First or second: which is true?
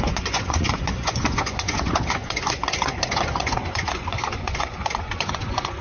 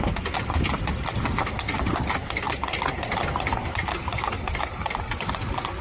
second